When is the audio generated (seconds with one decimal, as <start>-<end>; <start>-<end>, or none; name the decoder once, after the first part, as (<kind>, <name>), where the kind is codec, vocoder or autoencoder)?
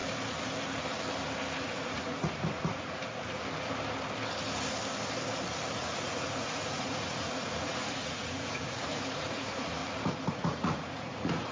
1.6-3.0 (vocoder, Vocos); 5.8-9.8; 10.3-11.5